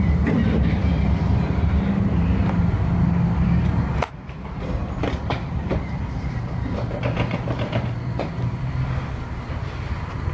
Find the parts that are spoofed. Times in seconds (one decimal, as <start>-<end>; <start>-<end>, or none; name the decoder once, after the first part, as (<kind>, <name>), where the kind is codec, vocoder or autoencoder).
4.8-6.4 (vocoder, BigVGAN v2)